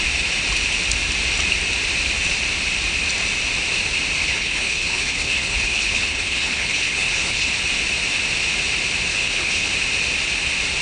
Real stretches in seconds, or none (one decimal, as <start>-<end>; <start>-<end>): 0.0-4.2; 7.5-9.1; 9.7-10.8